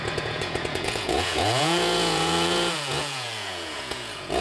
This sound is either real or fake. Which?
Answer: fake